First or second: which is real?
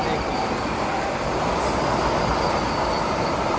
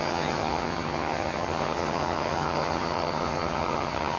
first